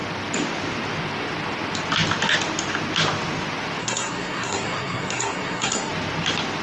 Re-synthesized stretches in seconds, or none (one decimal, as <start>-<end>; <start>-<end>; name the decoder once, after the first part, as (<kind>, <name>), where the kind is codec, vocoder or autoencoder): 3.8-5.9 (codec, SNAC)

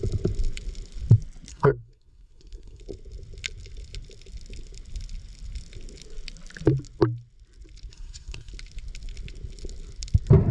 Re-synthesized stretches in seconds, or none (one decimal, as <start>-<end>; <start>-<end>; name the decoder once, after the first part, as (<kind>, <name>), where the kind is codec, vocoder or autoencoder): 1.5-2.8 (codec, SNAC); 7.9-8.5

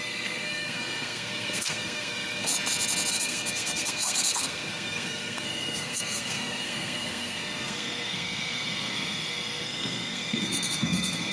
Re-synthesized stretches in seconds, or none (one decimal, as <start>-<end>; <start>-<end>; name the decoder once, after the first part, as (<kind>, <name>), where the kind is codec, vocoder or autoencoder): 0.0-2.5 (codec, SNAC); 3.1-11.3

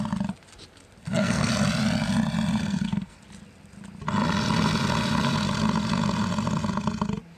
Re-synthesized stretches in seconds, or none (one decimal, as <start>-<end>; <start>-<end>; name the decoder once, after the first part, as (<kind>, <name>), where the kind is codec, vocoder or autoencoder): 1.0-1.5 (codec, SNAC); 2.6-3.2

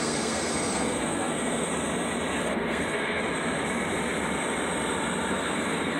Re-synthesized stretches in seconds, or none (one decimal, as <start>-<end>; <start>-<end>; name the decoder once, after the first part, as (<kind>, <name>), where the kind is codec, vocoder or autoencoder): 0.0-1.7 (codec, SNAC); 2.4-3.2; 5.3-6.0

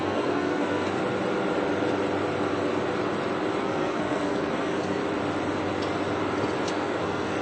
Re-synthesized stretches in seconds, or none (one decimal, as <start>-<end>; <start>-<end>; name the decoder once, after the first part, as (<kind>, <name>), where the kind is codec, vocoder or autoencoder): 0.0-1.0 (codec, SNAC); 3.6-5.0; 6.7-7.4